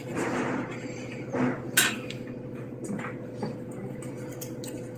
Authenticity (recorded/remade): recorded